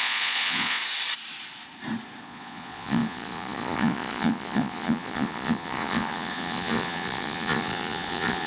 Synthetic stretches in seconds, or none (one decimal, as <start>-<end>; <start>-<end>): 0.0-0.8; 2.2-8.5